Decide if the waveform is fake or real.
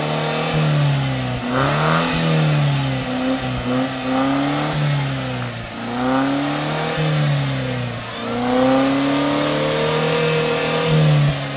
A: real